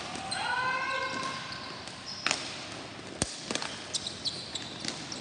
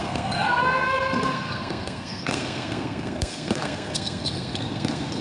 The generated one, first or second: second